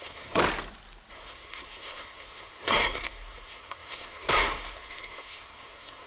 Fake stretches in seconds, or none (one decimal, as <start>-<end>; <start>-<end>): 0.0-0.4; 1.1-6.1